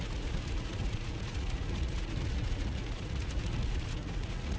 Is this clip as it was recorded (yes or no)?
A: no